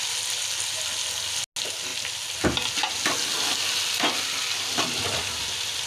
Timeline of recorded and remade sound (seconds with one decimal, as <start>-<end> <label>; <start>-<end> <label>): 0.0-5.9 recorded